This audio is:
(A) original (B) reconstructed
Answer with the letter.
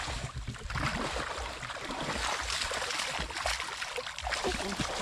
A